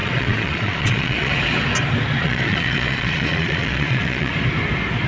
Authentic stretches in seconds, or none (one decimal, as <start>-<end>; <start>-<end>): 1.3-2.2; 4.3-5.1